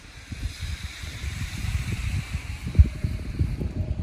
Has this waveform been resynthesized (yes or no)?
yes